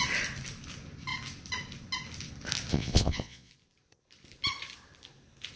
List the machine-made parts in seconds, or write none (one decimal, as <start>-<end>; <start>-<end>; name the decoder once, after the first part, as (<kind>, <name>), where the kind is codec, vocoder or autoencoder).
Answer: 2.7-3.5 (vocoder, Vocos)